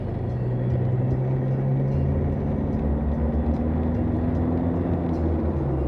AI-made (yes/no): no